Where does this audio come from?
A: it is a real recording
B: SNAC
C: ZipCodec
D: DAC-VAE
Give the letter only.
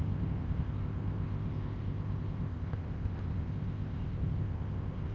C